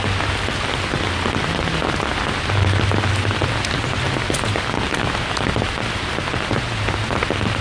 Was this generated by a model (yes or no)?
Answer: no